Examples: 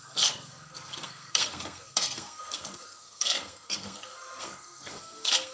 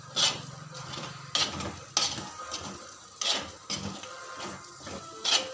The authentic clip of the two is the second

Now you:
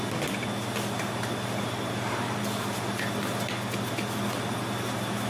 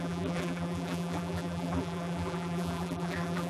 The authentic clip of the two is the first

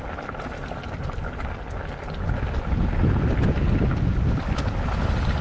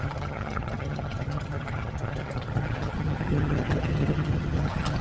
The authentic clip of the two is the first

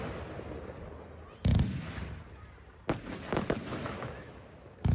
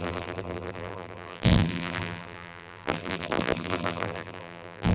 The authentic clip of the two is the first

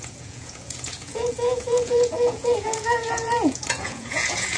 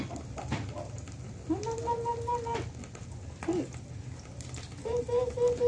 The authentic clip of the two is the second